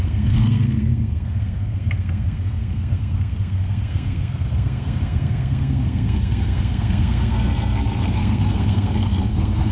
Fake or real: fake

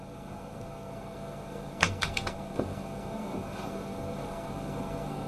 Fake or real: fake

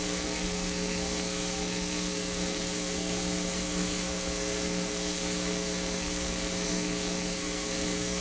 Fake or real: fake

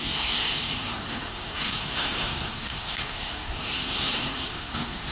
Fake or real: fake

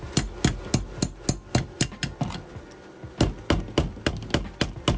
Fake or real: real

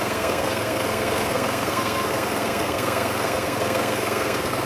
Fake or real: fake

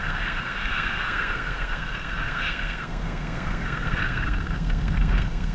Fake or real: fake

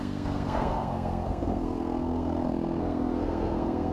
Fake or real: fake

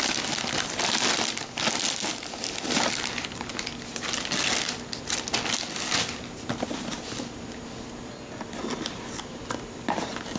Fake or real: real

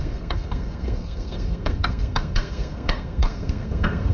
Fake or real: fake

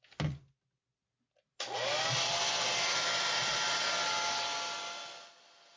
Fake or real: real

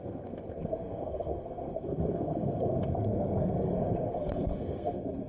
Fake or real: fake